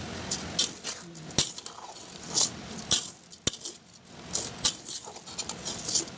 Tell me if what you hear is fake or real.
real